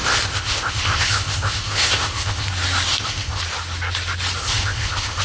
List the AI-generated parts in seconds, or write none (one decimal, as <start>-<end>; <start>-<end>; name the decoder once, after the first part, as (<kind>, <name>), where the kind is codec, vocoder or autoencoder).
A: 0.0-2.5 (codec, ZipCodec); 2.9-3.4; 4.4-5.2